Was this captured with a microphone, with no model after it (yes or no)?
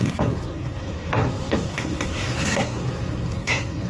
no